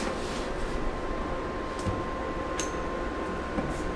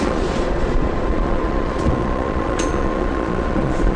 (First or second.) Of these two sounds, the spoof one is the second